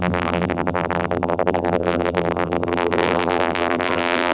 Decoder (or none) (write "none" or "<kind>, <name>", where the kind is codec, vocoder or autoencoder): vocoder, BigVGAN v2